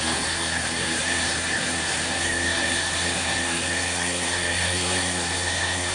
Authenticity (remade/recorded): remade